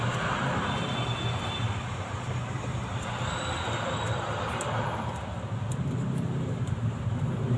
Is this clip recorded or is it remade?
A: recorded